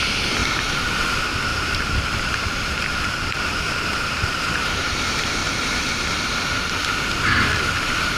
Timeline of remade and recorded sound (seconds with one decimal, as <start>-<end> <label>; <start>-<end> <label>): 0.0-1.5 recorded; 1.5-5.0 remade; 5.0-5.4 recorded; 5.4-6.3 remade; 6.3-8.2 recorded